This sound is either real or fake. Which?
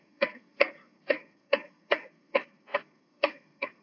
fake